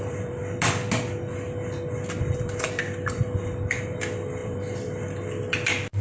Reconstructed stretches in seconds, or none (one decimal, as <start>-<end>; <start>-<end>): 0.0-0.4; 2.4-6.0